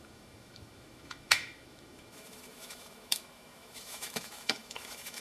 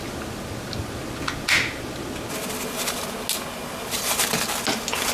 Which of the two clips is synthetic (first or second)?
first